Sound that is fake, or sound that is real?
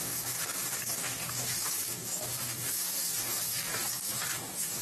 fake